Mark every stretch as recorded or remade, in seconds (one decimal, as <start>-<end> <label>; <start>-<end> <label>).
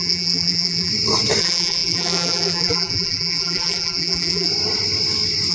0.0-0.9 remade; 0.9-1.4 recorded; 1.4-4.5 remade; 4.5-5.5 recorded